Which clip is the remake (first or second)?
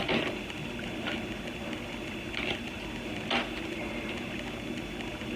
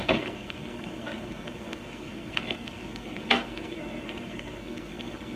second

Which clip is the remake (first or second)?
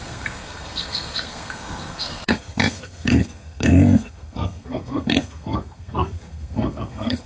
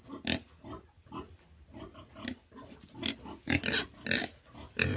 first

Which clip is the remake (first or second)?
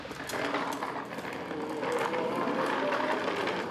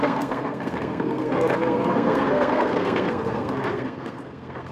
second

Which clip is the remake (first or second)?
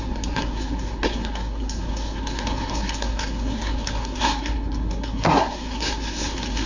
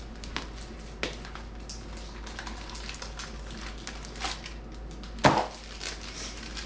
first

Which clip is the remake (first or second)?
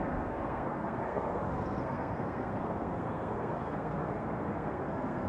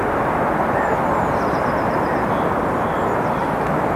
first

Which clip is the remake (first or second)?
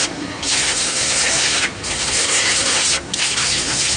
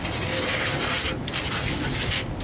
first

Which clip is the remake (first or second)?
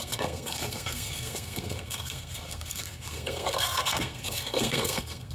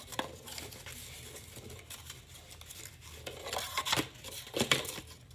first